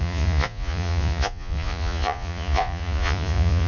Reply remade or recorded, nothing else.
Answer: remade